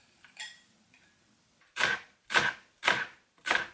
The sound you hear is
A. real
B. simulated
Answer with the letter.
B